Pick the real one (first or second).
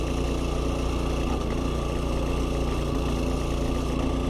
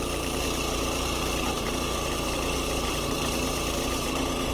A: first